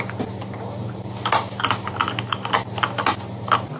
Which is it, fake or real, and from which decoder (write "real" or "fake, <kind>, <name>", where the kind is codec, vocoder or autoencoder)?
real